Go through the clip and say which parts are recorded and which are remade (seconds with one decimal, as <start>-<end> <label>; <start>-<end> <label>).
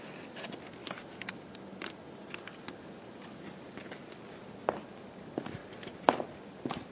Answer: 0.0-5.6 recorded; 5.6-6.9 remade